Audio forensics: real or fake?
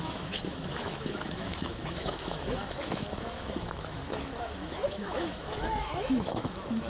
fake